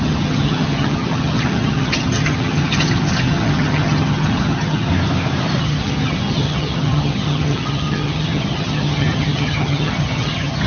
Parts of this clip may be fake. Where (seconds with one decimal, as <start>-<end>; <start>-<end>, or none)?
0.0-4.9; 5.6-10.7